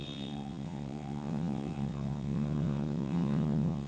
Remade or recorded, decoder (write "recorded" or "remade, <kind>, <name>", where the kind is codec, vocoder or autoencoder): remade, vocoder, WaveNeXt